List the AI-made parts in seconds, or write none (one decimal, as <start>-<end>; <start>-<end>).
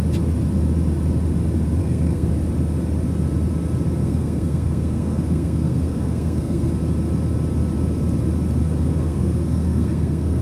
1.8-2.3; 4.0-6.7; 8.6-10.4